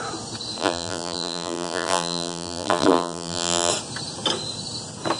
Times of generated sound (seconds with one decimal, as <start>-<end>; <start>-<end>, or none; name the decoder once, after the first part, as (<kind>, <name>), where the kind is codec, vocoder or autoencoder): 0.6-3.7 (vocoder, BigVGAN v2)